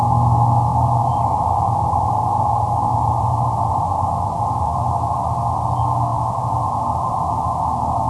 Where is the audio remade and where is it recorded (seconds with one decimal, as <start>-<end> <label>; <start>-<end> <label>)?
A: 0.0-0.7 recorded; 0.7-4.8 remade; 4.8-8.1 recorded